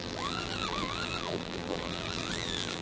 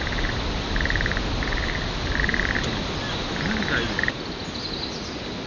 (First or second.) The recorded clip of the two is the second